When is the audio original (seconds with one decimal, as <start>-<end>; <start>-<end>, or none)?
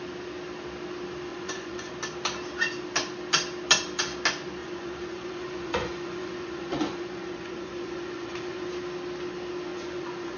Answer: 0.0-1.3; 1.9-4.6; 8.7-9.7